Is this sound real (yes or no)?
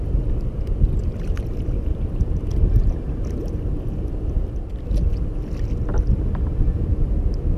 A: yes